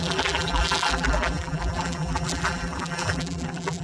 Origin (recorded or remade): remade